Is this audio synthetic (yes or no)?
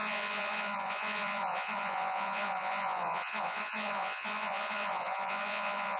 yes